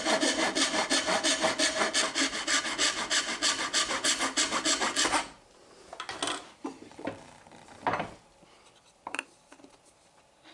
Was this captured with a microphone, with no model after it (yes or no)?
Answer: yes